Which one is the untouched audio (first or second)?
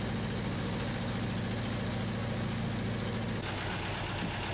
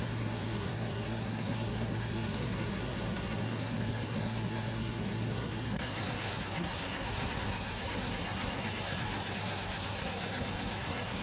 first